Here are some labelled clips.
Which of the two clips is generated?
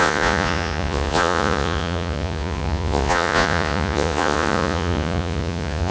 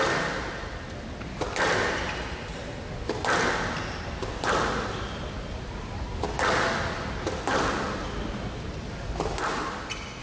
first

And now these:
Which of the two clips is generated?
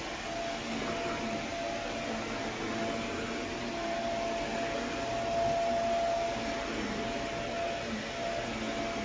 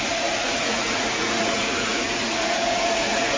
second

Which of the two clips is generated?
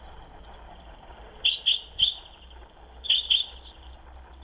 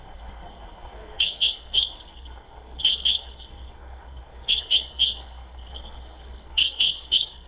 second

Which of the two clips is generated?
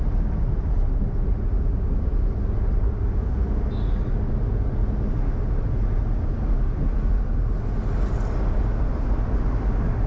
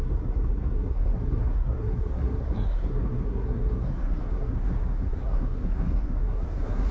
second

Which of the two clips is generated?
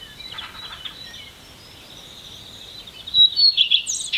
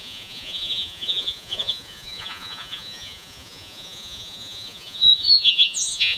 second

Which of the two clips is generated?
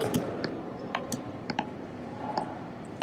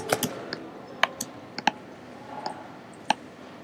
first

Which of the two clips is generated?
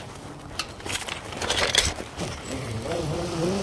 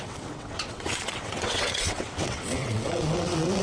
second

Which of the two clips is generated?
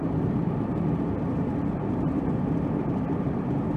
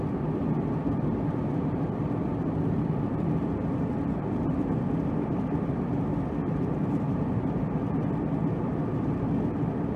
first